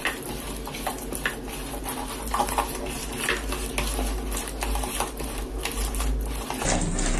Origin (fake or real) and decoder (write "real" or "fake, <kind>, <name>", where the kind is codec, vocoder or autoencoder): real